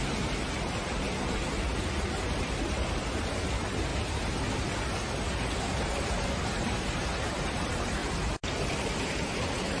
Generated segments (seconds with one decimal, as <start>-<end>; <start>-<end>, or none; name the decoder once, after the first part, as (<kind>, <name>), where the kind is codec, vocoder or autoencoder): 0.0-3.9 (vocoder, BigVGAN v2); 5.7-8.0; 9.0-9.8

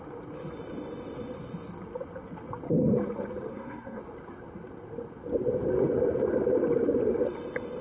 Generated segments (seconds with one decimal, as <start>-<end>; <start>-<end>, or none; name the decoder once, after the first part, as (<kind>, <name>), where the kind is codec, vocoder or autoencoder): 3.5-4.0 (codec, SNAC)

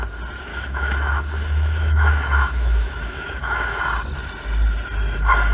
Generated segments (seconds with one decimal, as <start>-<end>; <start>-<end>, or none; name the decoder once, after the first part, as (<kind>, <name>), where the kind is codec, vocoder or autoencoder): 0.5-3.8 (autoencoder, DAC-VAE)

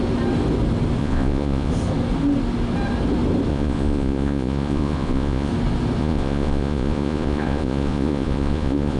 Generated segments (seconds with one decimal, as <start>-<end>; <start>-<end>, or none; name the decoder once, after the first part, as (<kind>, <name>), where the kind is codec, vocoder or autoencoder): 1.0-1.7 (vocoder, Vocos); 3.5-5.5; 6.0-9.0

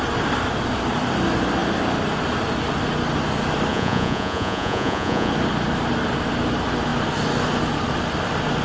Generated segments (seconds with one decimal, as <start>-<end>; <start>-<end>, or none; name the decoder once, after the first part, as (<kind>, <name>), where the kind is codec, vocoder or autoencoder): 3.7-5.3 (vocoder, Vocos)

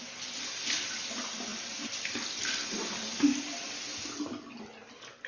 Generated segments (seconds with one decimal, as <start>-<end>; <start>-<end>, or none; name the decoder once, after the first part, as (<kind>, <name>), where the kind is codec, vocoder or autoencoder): none

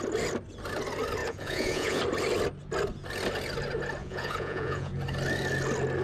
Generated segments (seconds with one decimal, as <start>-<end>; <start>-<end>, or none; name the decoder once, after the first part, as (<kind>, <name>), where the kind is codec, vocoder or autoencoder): 1.2-2.0 (vocoder, Vocos); 4.0-4.9

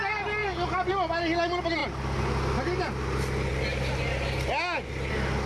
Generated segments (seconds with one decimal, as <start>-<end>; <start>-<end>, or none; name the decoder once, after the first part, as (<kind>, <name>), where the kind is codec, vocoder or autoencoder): none